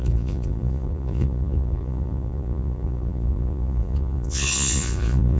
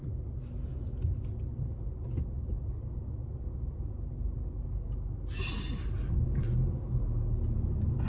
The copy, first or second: first